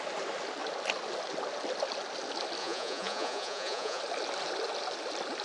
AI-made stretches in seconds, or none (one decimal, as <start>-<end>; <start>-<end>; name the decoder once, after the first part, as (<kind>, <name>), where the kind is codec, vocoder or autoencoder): 2.6-4.0 (vocoder, Vocos)